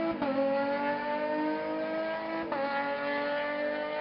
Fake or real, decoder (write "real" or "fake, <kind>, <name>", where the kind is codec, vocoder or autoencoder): real